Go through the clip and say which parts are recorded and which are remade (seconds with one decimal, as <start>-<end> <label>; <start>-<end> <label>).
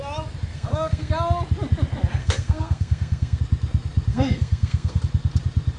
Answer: 0.0-0.5 recorded; 0.5-1.1 remade; 1.1-2.2 recorded; 2.2-3.4 remade; 3.4-4.1 recorded; 4.1-5.0 remade; 5.0-5.8 recorded